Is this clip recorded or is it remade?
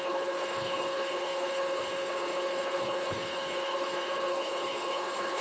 remade